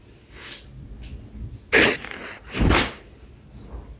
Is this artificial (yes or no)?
no